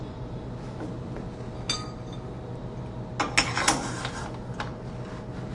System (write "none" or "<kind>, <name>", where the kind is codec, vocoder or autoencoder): none